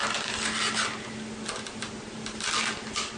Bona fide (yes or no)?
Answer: yes